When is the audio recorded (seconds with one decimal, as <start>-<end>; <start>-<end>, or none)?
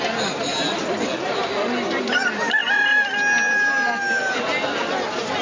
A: 0.0-5.4